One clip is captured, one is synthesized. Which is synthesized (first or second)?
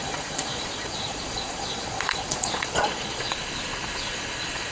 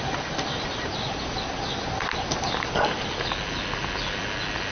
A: first